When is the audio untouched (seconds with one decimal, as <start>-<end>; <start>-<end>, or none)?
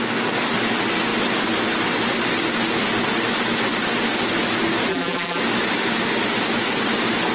0.0-4.9; 5.4-7.3